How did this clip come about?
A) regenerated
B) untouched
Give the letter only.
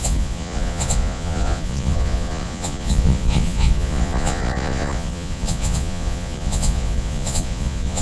A